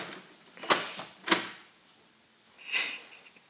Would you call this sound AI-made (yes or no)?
no